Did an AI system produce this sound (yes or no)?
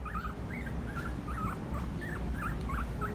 no